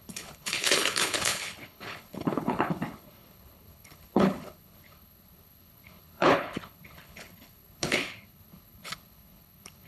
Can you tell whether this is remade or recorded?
remade